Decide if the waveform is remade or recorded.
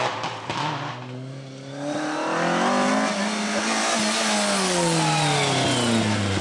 recorded